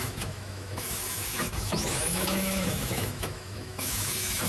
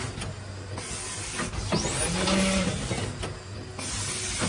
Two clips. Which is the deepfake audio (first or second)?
first